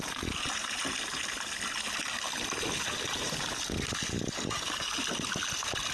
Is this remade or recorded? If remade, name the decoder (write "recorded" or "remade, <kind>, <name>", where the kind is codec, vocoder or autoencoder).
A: recorded